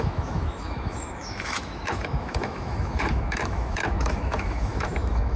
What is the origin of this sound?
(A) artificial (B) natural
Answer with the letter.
A